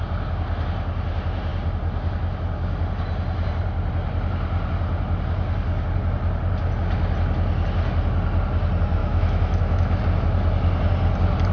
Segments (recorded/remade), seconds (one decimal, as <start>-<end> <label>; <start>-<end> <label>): 0.0-9.0 recorded; 9.0-10.0 remade; 10.0-11.5 recorded